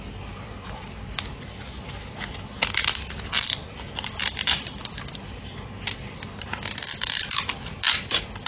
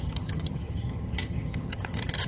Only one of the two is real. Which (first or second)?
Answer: first